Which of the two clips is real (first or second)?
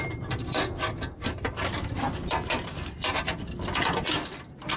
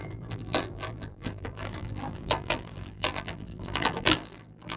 first